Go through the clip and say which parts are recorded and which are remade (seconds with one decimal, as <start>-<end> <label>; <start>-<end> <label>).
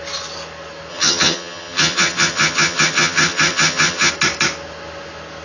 0.0-0.9 recorded; 0.9-4.1 remade; 4.1-5.4 recorded